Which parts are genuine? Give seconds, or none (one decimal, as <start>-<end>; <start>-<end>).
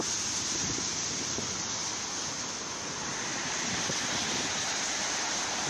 none